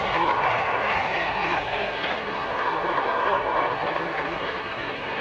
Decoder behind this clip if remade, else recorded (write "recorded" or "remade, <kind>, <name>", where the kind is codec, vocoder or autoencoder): remade, codec, SNAC